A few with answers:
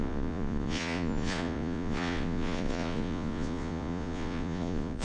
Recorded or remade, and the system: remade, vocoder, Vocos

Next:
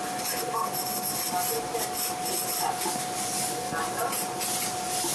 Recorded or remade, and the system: recorded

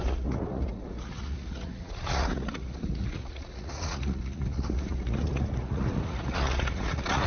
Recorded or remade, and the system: remade, vocoder, Vocos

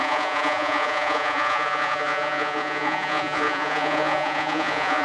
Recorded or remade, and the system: remade, vocoder, Vocos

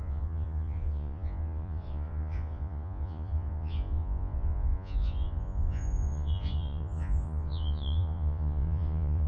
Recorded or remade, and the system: remade, vocoder, Vocos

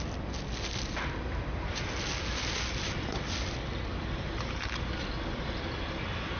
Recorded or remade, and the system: recorded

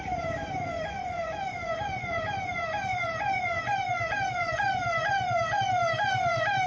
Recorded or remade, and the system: remade, vocoder, Vocos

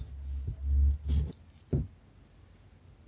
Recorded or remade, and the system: recorded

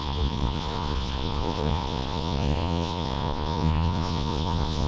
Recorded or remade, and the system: remade, vocoder, Vocos